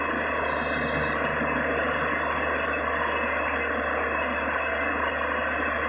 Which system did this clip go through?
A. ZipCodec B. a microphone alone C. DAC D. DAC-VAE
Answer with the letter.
B